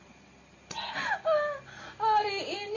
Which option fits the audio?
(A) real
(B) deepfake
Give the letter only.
A